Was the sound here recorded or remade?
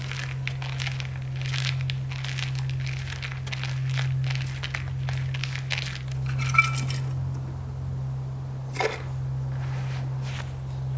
recorded